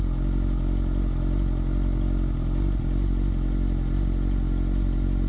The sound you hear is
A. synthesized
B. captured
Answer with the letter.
B